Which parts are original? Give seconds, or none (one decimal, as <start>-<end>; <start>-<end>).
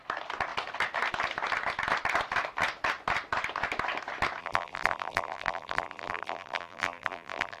0.0-4.4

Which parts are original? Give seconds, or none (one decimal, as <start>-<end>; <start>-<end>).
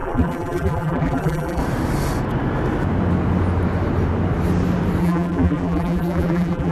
1.6-5.0